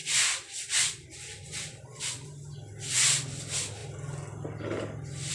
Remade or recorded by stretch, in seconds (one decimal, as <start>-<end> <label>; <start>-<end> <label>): 0.0-5.3 recorded